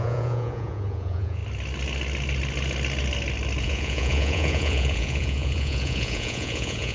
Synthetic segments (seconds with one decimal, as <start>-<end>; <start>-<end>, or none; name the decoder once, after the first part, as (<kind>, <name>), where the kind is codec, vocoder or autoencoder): 0.0-1.4 (vocoder, Vocos); 3.6-6.9